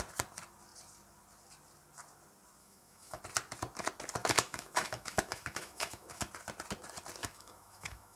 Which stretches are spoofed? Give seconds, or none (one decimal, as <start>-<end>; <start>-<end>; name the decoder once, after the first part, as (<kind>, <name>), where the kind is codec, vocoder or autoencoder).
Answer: 2.6-3.2 (autoencoder, DAC-VAE); 4.2-6.3; 7.2-8.2